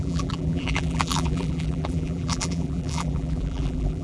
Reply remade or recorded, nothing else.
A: remade